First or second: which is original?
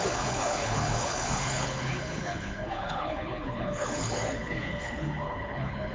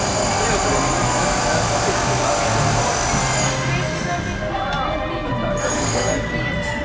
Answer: second